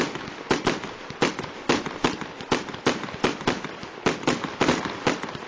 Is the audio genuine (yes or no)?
yes